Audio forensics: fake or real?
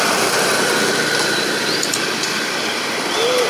real